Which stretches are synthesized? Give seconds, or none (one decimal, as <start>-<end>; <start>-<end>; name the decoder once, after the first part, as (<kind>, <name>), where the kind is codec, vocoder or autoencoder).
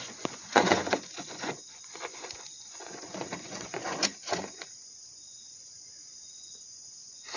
0.0-7.4 (vocoder, Vocos)